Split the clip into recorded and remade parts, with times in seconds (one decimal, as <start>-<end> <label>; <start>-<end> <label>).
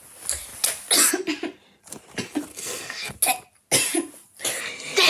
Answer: 0.0-2.5 recorded; 2.5-3.1 remade; 3.1-5.1 recorded